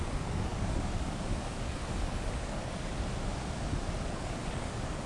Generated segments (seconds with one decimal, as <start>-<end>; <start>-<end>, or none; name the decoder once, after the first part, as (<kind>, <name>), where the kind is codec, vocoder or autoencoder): 0.0-2.9 (codec, DAC); 4.0-5.1